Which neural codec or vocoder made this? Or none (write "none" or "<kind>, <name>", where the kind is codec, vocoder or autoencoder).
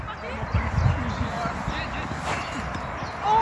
none